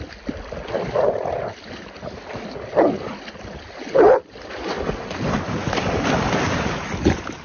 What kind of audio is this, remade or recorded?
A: recorded